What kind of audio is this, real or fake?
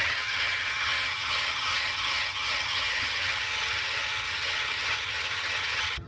fake